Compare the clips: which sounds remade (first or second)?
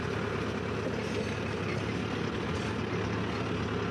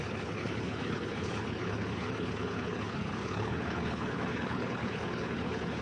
second